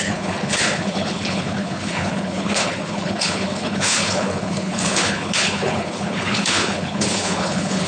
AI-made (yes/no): yes